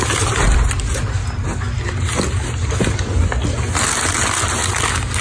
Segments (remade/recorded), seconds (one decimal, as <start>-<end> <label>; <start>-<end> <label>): 0.0-5.2 recorded